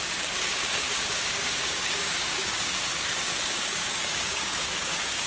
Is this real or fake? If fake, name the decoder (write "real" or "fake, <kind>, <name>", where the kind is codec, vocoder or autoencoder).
fake, codec, DAC